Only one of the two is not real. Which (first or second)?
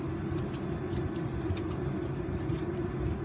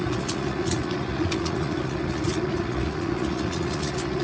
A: second